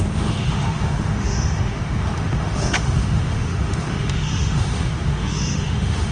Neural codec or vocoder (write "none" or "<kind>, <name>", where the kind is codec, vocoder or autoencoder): autoencoder, DAC-VAE